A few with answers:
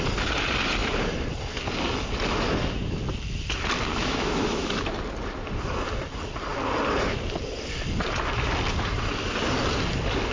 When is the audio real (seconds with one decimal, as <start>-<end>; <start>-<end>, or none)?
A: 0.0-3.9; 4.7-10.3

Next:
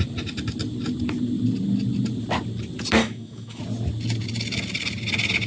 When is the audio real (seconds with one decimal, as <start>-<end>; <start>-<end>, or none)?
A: 0.0-3.0; 3.6-5.5

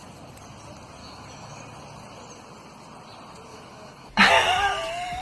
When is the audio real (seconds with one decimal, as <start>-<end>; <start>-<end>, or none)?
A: 0.0-1.0; 1.6-3.5; 4.3-5.2

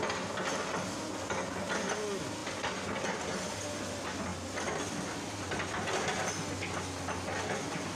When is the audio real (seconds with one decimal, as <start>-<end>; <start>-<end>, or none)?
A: 0.0-8.0

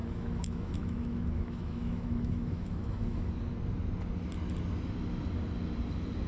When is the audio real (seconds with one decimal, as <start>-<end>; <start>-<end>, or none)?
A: 3.3-6.3

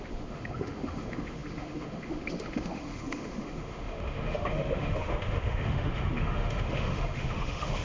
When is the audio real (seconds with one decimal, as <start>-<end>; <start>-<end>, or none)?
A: none